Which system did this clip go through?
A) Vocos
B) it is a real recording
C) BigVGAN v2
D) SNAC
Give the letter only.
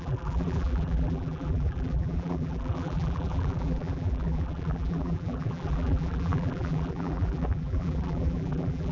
C